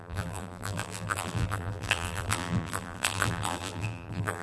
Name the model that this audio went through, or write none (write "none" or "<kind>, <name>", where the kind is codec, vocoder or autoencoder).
vocoder, BigVGAN v2